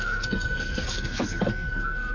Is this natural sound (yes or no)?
no